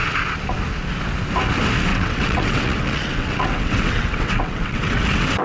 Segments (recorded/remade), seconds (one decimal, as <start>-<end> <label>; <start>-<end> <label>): 0.0-1.9 recorded; 1.9-5.4 remade